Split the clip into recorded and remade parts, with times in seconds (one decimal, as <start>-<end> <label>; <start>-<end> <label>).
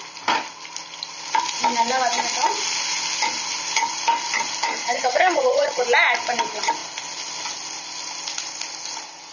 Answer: 0.0-4.8 recorded; 4.8-5.8 remade; 5.8-9.3 recorded